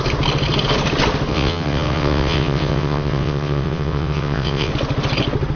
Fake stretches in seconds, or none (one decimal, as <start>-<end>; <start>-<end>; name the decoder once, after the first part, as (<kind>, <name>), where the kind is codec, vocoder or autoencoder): 1.3-4.7 (vocoder, WaveNeXt)